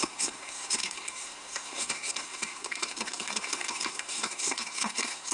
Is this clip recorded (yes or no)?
no